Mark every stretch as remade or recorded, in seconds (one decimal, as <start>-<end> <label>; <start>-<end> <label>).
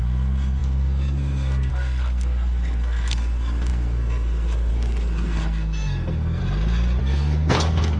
0.0-6.4 remade; 6.4-7.0 recorded; 7.0-8.0 remade